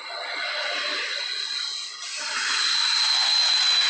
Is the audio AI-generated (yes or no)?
no